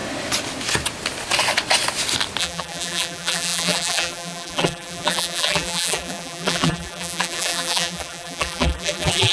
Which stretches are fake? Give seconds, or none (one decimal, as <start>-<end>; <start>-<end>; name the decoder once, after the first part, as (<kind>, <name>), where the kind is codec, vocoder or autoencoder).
2.4-9.3 (vocoder, BigVGAN v2)